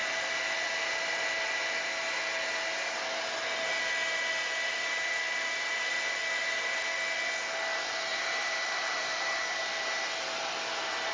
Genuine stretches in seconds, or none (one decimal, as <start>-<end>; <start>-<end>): 0.0-8.1; 9.4-11.1